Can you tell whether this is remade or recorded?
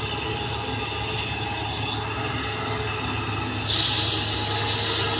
recorded